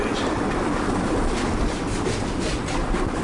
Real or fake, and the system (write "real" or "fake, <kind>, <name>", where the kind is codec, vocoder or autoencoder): real